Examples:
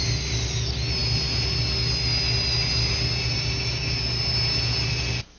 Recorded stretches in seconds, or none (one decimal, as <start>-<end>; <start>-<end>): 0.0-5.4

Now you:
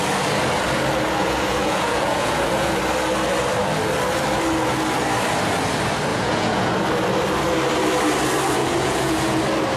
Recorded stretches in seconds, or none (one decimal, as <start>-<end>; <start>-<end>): 0.0-1.2; 2.8-6.1; 6.7-8.6; 9.4-9.8

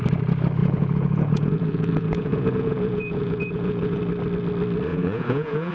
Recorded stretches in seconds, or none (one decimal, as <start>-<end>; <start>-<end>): 0.0-0.6; 4.0-4.9

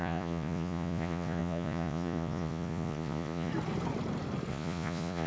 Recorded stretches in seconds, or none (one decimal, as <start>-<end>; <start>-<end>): 3.5-4.5

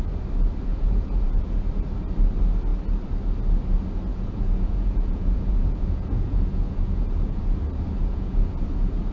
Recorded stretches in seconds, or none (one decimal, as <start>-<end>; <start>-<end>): 0.0-0.7; 1.4-4.1; 7.4-8.0